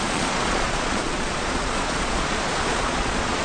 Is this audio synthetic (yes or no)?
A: yes